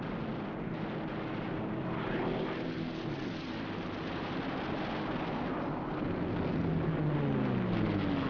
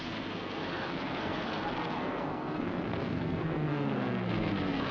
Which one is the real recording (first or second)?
first